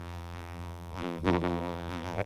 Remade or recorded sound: remade